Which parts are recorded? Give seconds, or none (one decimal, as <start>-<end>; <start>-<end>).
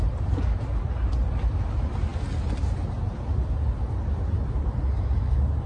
0.0-5.7